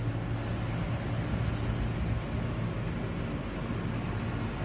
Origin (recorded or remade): recorded